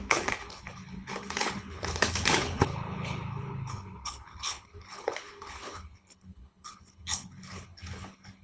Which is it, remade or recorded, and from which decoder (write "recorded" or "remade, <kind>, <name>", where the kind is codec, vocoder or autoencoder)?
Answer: remade, codec, HILCodec